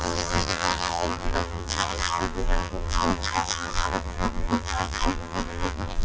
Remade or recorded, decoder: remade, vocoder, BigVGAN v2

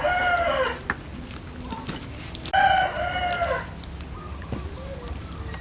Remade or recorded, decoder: recorded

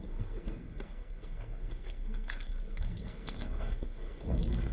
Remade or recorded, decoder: remade, codec, SNAC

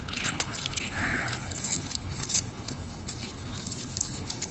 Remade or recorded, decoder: remade, codec, HILCodec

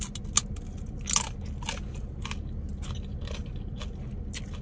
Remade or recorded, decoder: recorded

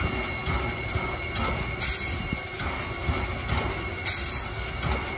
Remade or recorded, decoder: recorded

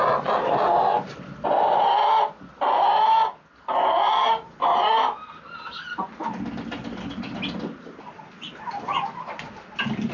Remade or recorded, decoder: recorded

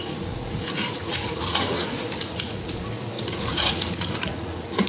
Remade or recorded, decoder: remade, vocoder, Vocos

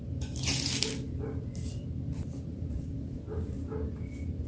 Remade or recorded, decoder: recorded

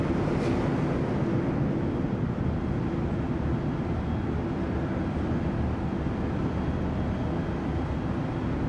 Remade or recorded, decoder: recorded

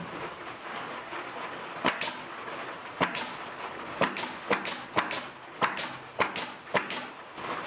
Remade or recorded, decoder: recorded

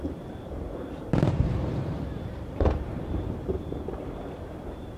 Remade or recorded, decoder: remade, vocoder, BigVGAN v2